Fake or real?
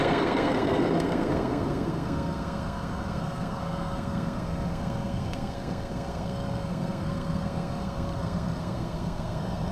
fake